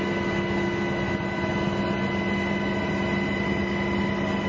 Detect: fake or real real